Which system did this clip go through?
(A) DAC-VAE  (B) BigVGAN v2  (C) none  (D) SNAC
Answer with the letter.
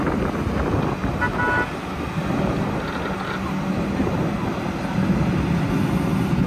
C